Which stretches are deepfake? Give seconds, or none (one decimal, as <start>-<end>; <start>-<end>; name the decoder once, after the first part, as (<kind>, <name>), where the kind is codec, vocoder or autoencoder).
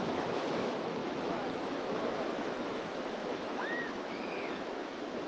0.0-5.3 (autoencoder, DAC-VAE)